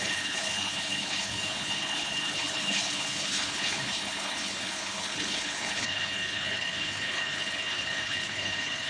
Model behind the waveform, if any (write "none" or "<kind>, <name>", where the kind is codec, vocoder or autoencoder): codec, HILCodec